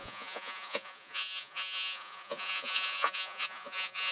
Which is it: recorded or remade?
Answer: remade